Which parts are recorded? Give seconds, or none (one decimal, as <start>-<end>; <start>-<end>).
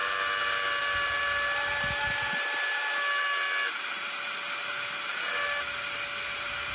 0.0-6.7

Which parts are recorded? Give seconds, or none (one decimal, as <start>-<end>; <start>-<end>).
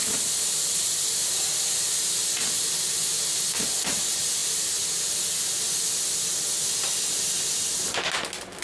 0.0-8.6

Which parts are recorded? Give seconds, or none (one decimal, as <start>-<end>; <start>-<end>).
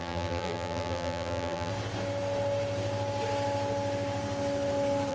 1.7-5.1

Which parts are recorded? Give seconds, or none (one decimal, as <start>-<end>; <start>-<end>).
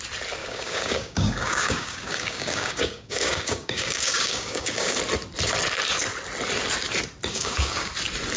0.0-0.4; 5.0-7.3; 7.9-8.4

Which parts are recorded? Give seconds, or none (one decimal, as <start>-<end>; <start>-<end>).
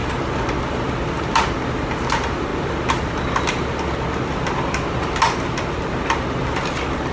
0.0-7.1